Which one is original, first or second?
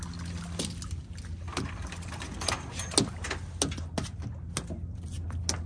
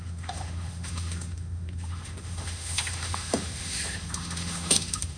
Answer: first